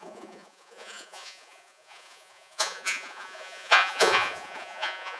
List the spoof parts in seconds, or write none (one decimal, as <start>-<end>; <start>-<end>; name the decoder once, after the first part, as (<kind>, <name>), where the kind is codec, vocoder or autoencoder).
0.0-5.2 (vocoder, Vocos)